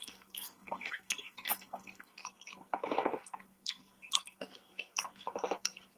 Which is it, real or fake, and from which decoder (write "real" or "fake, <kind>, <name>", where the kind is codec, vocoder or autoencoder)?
fake, codec, SNAC